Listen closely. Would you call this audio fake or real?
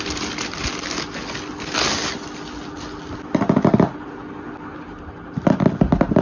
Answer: real